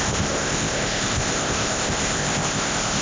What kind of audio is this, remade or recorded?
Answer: remade